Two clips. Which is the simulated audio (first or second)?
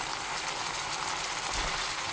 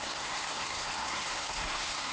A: second